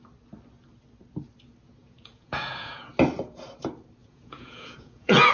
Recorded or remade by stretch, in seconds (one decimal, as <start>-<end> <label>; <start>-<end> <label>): 0.0-1.8 recorded; 1.8-2.9 remade; 2.9-4.0 recorded; 4.0-5.3 remade